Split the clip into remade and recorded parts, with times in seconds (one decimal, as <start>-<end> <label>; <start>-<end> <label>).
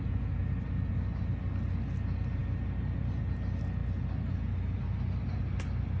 0.0-6.0 recorded